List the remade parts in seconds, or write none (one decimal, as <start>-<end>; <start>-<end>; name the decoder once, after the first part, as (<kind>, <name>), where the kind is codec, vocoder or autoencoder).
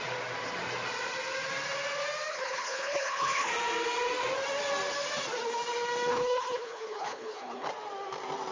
2.3-3.5 (codec, HILCodec); 6.1-7.7